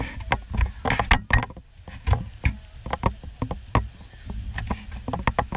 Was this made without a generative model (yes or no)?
yes